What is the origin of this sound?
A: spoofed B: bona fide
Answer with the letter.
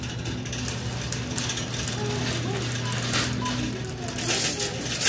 B